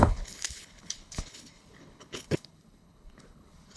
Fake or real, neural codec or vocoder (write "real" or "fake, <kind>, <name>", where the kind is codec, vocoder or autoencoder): fake, codec, HILCodec